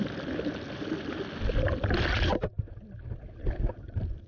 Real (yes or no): yes